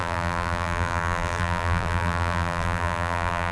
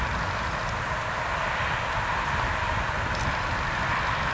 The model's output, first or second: first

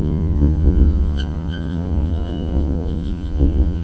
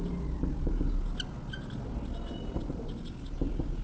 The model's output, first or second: first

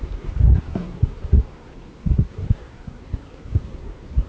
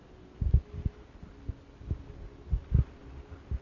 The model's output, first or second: first